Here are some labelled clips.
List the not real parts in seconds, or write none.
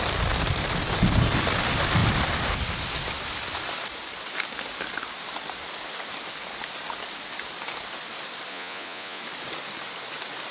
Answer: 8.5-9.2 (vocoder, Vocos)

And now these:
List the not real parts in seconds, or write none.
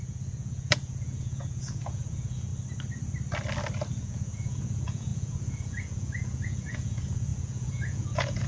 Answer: 0.0-2.5 (vocoder, Vocos); 3.9-8.5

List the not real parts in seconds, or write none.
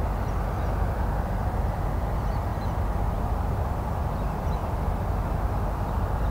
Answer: none